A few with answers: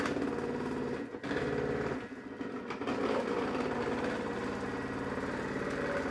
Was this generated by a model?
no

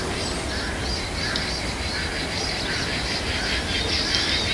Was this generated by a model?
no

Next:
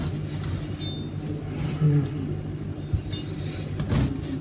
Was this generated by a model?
no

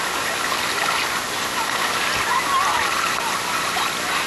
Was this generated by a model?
no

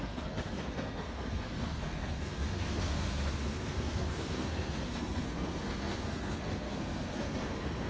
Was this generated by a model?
yes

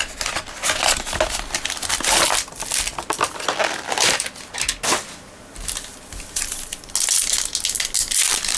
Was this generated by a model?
no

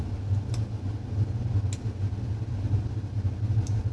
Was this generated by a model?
no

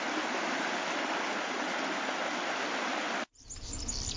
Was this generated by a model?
no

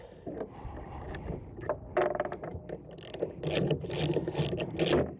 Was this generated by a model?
no